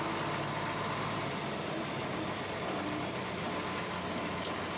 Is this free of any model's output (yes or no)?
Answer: yes